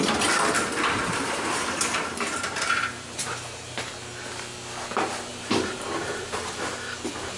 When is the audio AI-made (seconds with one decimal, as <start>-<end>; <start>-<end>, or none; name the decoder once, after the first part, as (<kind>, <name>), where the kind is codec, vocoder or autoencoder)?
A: 1.0-3.9 (vocoder, BigVGAN v2); 5.3-6.5